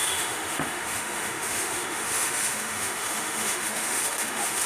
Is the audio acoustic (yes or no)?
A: no